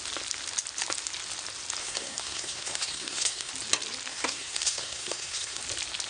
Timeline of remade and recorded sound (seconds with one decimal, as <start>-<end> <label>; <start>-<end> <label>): 0.0-1.8 recorded; 1.8-3.5 remade; 3.5-4.1 recorded; 4.1-5.6 remade; 5.6-6.1 recorded